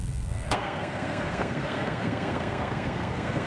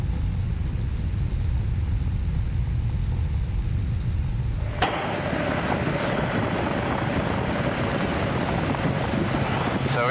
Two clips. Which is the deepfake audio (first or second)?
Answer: first